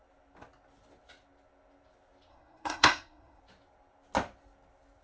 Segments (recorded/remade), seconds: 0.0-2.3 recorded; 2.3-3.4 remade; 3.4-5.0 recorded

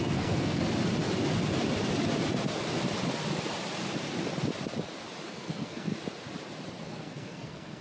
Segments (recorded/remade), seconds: 0.0-0.6 remade; 0.6-5.3 recorded; 5.3-5.9 remade; 5.9-6.8 recorded; 6.8-7.8 remade

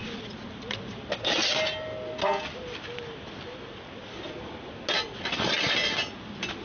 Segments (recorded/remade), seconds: 0.0-6.6 recorded

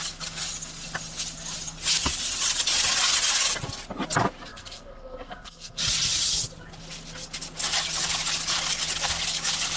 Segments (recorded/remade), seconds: 0.0-4.5 recorded; 4.5-5.8 remade; 5.8-9.8 recorded

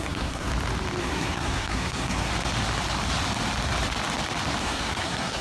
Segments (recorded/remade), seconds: 0.0-0.5 remade; 0.5-1.0 recorded; 1.0-2.3 remade; 2.3-4.6 recorded; 4.6-5.4 remade